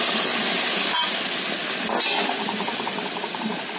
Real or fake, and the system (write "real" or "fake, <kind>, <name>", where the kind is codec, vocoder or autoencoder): real